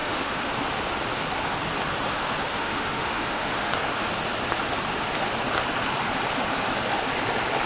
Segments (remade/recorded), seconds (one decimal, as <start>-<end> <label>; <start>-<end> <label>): 0.0-0.5 remade; 0.5-2.5 recorded; 2.5-3.7 remade; 3.7-7.7 recorded